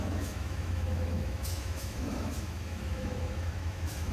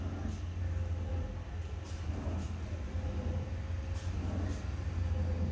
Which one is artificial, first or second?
first